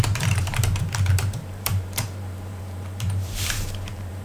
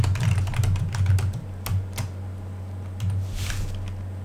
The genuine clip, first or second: second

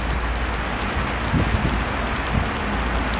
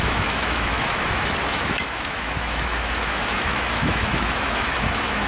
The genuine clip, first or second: first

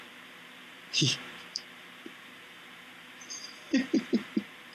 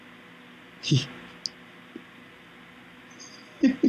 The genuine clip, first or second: second